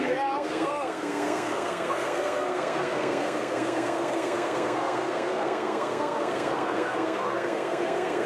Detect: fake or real fake